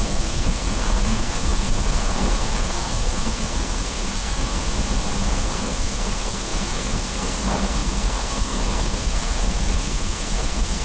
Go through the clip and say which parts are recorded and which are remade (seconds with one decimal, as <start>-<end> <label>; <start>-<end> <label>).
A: 0.0-4.6 remade; 4.6-5.2 recorded; 5.2-10.8 remade